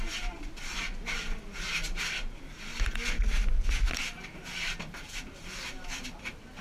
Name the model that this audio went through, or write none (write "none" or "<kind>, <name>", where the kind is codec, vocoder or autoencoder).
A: none